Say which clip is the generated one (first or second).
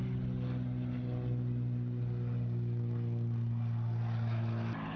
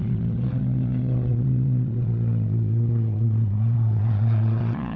second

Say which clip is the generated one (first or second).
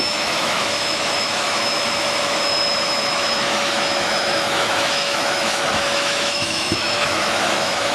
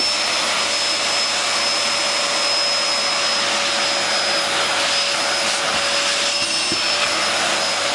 first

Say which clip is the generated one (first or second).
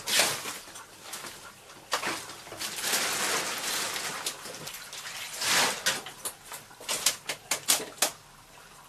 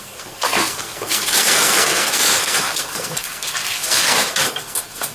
second